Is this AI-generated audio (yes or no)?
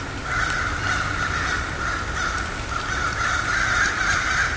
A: no